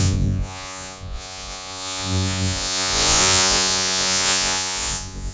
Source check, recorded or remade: remade